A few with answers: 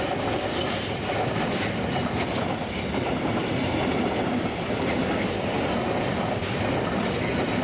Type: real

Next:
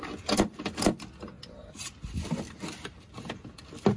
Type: real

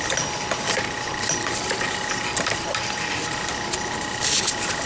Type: real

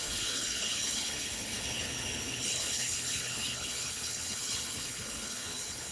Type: fake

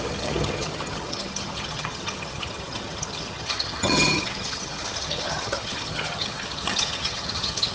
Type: fake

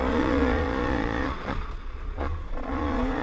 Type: fake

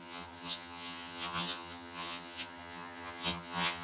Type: fake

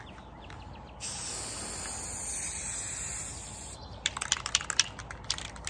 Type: real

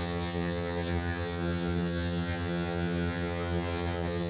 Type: fake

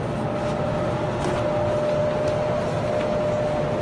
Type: real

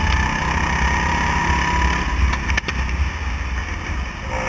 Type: real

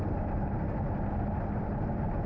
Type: real